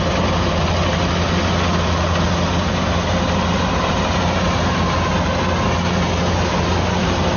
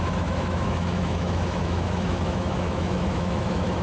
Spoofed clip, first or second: second